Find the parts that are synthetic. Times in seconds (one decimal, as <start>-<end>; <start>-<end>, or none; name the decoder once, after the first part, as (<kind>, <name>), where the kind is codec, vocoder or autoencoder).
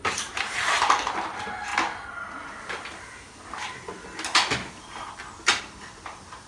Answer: 0.0-1.7 (vocoder, BigVGAN v2); 5.6-6.5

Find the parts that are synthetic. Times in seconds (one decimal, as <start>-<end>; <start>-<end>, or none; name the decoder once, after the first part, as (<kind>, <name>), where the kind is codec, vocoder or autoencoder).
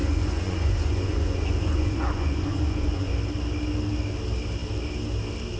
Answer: 0.0-3.1 (vocoder, Vocos)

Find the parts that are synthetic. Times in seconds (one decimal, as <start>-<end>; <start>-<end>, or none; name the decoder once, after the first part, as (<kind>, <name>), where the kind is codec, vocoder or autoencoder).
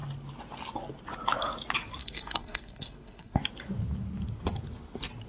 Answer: 2.0-3.4 (codec, SNAC)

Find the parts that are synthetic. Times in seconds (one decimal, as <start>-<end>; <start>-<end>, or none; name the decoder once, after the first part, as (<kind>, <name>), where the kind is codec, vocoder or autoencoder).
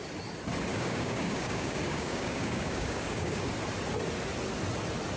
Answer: 0.7-3.5 (codec, DAC)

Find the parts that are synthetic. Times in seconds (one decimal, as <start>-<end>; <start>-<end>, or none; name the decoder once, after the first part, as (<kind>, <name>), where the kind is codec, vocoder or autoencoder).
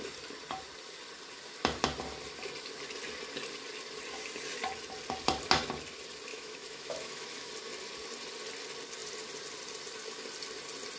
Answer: 6.3-7.5 (autoencoder, DAC-VAE)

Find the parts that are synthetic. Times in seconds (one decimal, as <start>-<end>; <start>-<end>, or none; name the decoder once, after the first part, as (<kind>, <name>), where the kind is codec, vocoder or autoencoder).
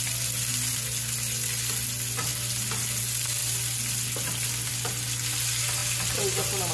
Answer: none